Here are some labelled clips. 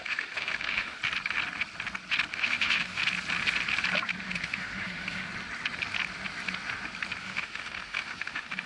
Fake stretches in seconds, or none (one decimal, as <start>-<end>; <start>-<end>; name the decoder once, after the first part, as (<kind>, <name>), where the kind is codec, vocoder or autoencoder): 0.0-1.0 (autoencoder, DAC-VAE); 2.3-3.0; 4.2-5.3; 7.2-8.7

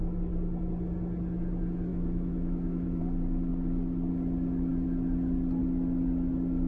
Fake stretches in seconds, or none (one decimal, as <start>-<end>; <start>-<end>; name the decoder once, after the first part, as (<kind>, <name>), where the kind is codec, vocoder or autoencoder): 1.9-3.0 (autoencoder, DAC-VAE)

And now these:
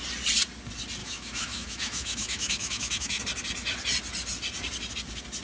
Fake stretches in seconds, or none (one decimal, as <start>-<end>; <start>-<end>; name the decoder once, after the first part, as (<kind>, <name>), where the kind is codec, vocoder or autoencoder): 1.0-3.2 (autoencoder, DAC-VAE)

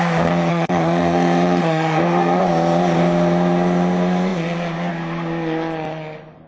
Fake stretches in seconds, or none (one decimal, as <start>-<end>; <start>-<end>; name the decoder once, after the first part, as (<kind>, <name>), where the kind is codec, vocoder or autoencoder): 0.5-2.4 (autoencoder, DAC-VAE)

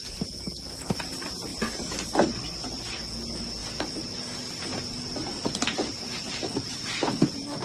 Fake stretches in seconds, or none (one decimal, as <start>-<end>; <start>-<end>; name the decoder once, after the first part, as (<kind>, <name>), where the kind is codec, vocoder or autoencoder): none

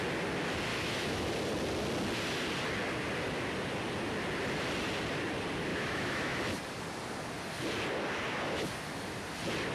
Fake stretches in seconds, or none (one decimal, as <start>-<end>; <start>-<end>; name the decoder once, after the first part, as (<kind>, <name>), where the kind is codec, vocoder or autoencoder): 0.7-1.3 (autoencoder, DAC-VAE); 5.7-6.4